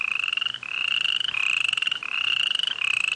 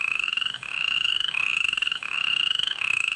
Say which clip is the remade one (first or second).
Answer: second